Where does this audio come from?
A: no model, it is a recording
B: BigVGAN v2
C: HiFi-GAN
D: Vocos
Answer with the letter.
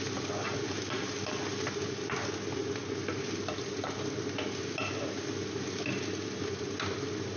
A